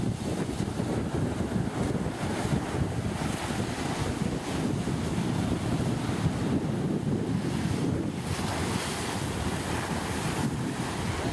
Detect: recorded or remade recorded